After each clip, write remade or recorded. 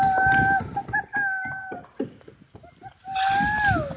recorded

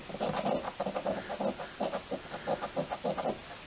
recorded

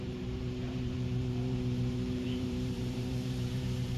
remade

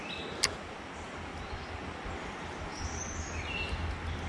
recorded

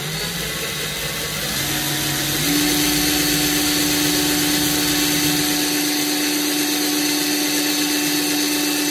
recorded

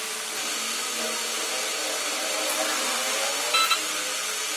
recorded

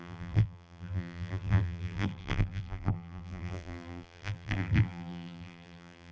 remade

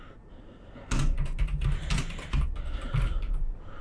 recorded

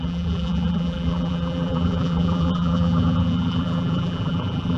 remade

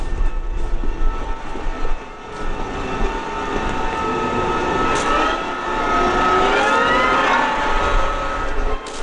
recorded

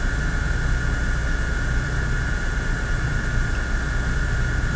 recorded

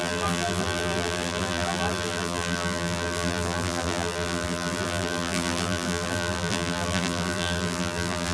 remade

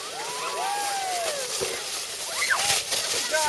recorded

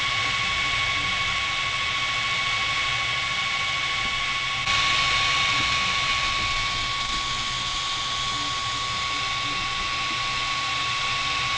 recorded